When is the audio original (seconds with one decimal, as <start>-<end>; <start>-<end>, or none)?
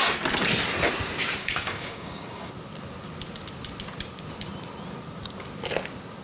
0.0-1.4; 2.5-6.2